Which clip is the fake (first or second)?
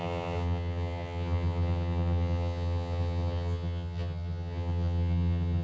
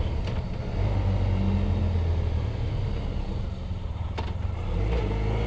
first